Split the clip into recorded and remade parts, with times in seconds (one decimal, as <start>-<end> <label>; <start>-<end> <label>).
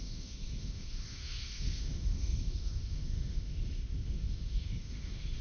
0.0-5.4 remade